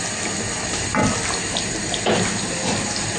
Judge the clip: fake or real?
real